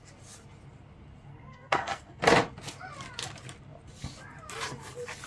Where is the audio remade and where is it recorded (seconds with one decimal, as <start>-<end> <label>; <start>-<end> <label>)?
0.0-1.3 recorded; 1.3-2.2 remade; 2.2-5.3 recorded